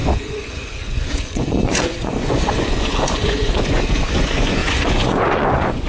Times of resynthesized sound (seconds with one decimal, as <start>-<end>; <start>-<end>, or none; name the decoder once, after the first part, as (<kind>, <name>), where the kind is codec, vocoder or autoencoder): 0.0-5.9 (vocoder, Vocos)